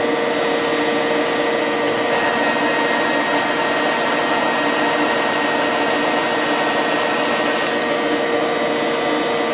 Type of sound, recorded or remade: recorded